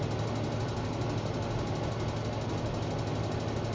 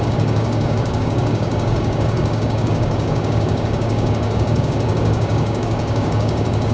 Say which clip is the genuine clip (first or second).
first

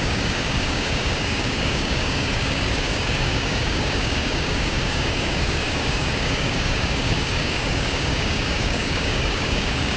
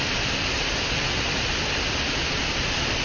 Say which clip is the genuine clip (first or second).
second